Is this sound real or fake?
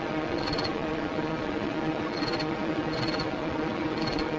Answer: fake